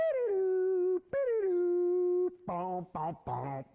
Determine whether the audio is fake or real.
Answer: real